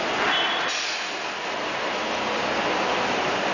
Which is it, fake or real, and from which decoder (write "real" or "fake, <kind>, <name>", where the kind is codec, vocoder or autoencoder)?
real